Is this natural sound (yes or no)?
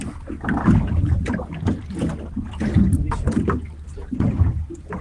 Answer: yes